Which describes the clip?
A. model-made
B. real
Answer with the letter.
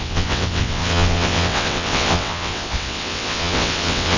A